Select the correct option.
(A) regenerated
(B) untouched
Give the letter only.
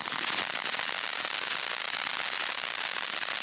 B